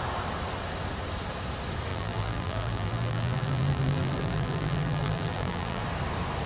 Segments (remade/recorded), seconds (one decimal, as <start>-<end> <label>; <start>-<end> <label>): 0.0-1.9 recorded; 1.9-5.8 remade; 5.8-6.5 recorded